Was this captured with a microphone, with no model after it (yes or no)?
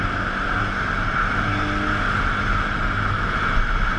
yes